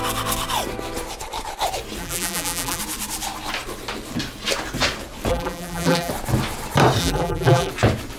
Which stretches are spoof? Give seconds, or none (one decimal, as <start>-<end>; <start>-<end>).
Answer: 2.0-2.8; 5.3-6.1; 7.0-7.7